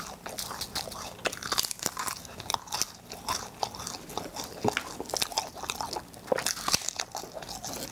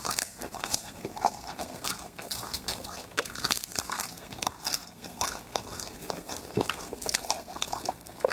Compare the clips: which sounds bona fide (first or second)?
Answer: first